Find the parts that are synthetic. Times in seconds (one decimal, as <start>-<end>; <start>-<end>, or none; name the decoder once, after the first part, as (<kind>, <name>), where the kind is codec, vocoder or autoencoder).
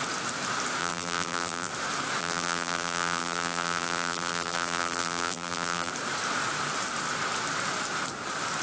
0.8-1.7 (vocoder, BigVGAN v2); 2.2-5.9